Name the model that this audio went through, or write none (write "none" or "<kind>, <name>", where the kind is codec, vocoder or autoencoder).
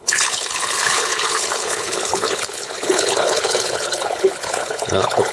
codec, HILCodec